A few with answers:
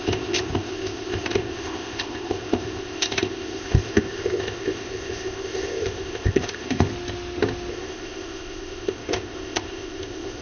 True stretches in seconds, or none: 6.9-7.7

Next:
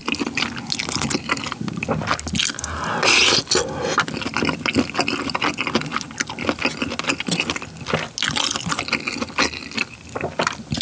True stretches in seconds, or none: 0.0-10.8

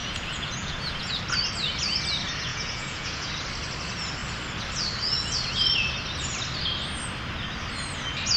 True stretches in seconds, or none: 1.2-2.5; 3.3-8.4

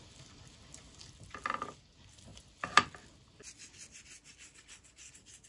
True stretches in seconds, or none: 0.0-4.3; 5.1-5.5